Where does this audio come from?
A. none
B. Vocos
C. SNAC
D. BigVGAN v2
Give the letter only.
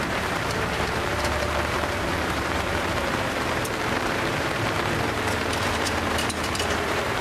D